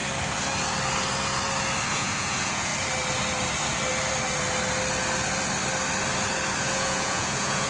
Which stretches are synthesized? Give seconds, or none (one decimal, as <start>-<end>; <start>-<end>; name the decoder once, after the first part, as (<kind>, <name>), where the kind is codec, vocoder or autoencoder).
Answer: 1.9-2.7 (vocoder, Vocos); 6.6-7.7